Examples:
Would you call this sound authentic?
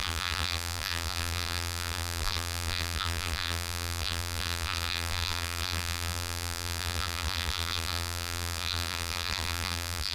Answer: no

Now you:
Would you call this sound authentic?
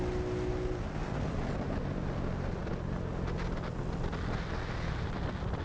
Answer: yes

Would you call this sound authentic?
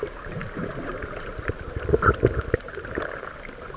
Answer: yes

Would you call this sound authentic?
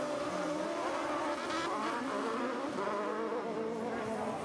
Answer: yes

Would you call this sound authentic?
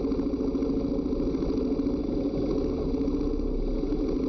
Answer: yes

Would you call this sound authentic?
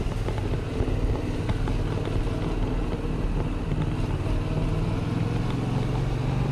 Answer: yes